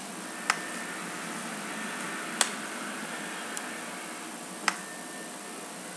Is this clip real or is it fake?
real